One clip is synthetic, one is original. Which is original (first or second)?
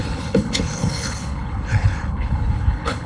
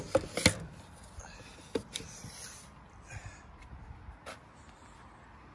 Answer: second